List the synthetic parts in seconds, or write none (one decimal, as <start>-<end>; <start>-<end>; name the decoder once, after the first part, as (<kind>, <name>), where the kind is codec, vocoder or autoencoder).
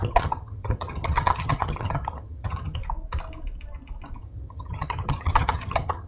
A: 0.0-2.8 (vocoder, HiFi-GAN); 4.2-6.1